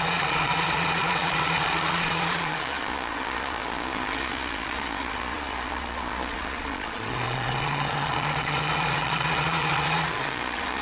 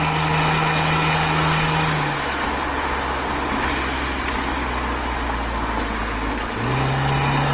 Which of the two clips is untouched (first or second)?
second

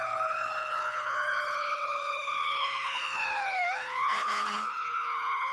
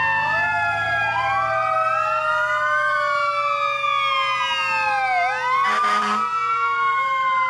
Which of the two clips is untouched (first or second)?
second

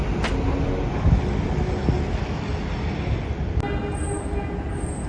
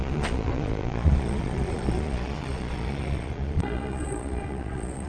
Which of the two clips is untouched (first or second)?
first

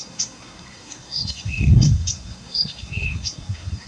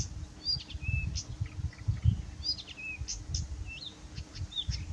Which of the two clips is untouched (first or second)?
second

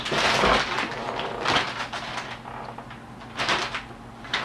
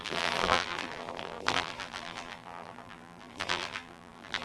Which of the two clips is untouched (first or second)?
first